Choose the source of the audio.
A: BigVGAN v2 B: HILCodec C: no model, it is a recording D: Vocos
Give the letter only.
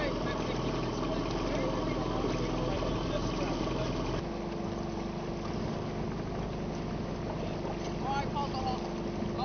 C